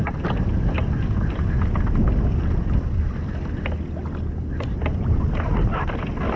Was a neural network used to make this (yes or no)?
no